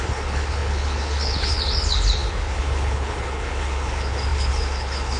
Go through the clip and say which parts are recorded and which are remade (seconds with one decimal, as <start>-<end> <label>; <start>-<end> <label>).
0.0-5.2 remade